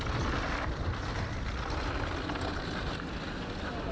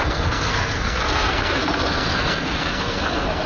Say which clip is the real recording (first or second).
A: first